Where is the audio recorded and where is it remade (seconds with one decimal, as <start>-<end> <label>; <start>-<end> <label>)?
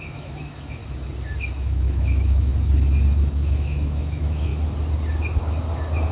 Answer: 0.0-0.8 remade; 0.8-1.6 recorded; 1.6-2.5 remade; 2.5-3.2 recorded; 3.2-4.5 remade; 4.5-6.1 recorded